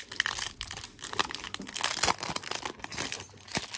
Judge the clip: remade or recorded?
recorded